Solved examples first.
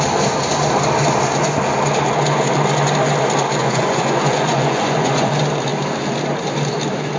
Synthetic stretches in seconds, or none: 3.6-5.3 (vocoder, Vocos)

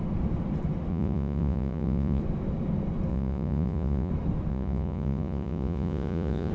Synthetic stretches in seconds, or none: 0.9-2.2 (vocoder, Vocos); 3.1-4.1; 4.5-6.5

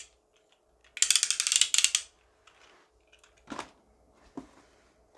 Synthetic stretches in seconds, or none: none

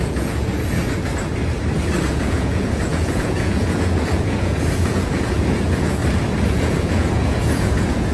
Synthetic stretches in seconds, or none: 0.0-0.5 (vocoder, Vocos); 2.0-6.0; 6.5-8.1

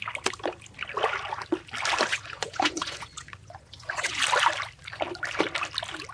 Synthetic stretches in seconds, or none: 2.1-4.2 (vocoder, Vocos)